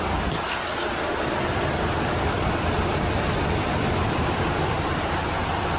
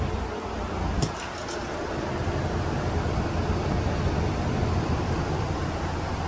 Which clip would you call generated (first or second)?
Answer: first